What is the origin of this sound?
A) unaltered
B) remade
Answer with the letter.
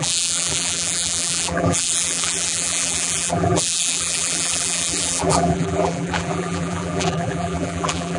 B